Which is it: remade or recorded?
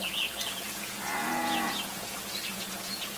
remade